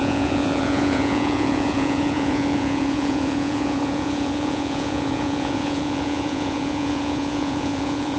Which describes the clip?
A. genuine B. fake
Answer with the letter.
B